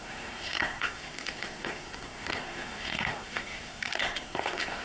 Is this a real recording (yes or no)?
no